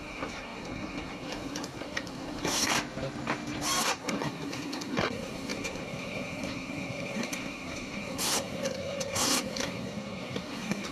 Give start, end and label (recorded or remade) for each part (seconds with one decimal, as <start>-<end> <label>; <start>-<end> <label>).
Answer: 0.0-2.7 remade; 2.7-3.8 recorded; 3.8-10.9 remade